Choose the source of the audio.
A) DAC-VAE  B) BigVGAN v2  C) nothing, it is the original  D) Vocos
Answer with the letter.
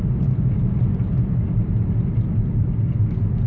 C